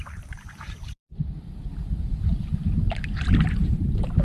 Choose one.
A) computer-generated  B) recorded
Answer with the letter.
A